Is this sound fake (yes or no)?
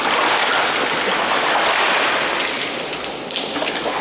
no